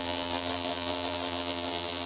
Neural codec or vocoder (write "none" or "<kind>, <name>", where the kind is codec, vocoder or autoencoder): vocoder, BigVGAN v2